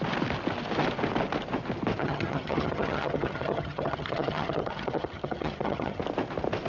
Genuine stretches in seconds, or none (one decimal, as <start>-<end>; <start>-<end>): 0.0-2.0; 6.0-6.7